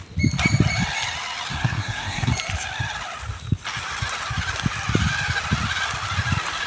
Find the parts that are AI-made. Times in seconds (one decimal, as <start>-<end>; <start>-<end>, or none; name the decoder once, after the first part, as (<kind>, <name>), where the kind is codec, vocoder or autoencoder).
1.5-2.3 (codec, SNAC)